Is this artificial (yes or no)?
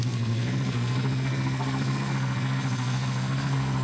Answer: yes